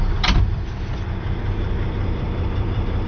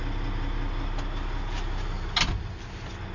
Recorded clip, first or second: second